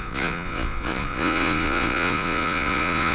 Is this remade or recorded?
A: remade